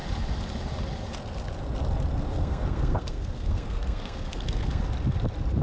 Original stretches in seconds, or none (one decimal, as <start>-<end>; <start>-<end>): 0.0-2.3; 4.8-5.6